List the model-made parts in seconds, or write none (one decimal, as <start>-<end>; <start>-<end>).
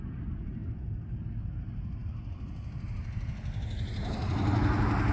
none